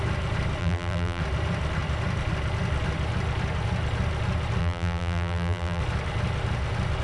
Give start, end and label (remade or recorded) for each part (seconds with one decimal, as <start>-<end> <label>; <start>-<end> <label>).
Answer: 0.0-0.6 recorded; 0.6-1.2 remade; 1.2-4.6 recorded; 4.6-5.8 remade; 5.8-7.0 recorded